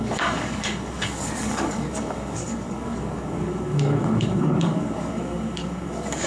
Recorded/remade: remade